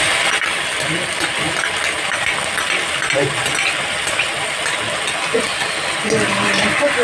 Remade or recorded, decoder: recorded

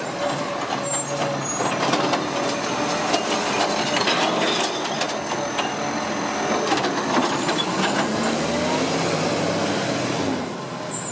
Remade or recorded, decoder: recorded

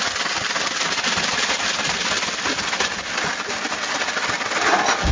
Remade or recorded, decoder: recorded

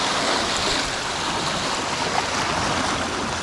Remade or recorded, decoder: recorded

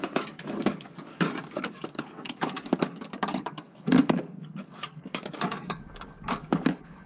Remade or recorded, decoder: remade, codec, DAC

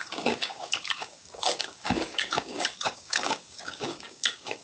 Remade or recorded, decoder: remade, codec, DAC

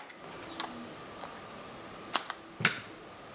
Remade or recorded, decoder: recorded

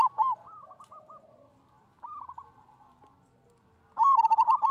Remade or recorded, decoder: recorded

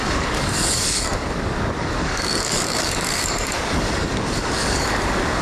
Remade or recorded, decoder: remade, codec, DAC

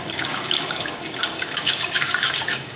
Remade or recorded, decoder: remade, codec, DAC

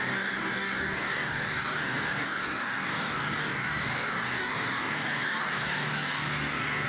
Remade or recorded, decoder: remade, codec, DAC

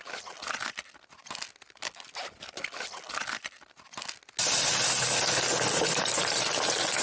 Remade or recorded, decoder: recorded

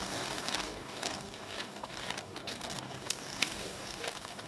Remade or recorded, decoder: remade, codec, DAC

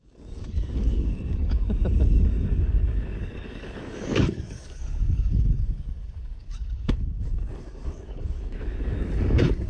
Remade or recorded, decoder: remade, codec, DAC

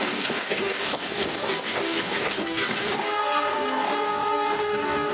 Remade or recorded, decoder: remade, codec, DAC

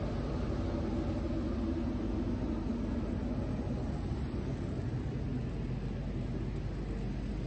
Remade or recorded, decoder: recorded